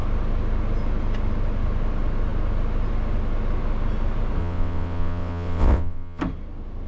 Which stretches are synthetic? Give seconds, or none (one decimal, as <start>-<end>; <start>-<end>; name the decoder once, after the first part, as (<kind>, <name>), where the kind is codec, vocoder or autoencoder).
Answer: 4.4-6.2 (vocoder, WaveNeXt)